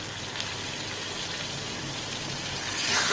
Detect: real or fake real